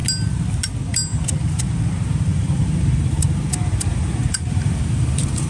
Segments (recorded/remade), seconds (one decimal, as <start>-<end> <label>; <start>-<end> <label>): 0.0-0.8 recorded; 0.8-5.5 remade